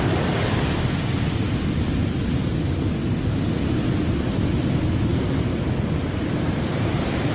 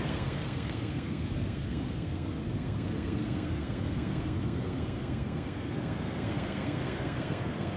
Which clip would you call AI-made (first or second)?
second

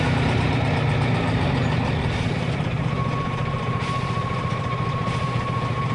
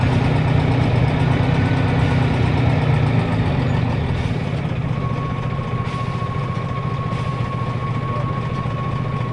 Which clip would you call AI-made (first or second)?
first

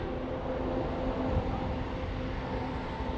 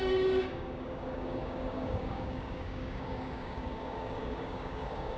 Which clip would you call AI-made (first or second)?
second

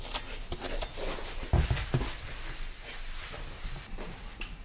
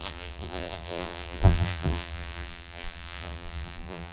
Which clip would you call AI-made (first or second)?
second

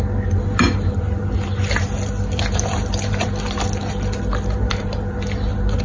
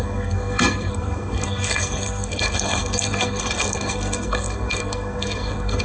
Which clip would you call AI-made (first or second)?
second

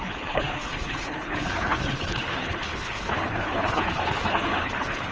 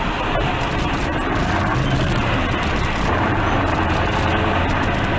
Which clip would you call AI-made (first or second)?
first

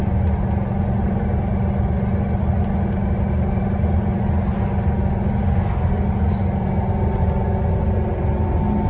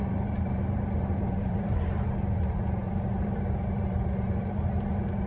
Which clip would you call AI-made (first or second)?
second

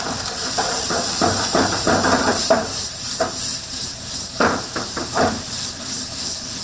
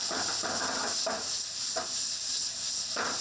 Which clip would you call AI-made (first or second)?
first